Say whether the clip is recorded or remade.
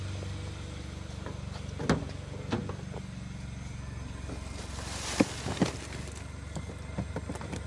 recorded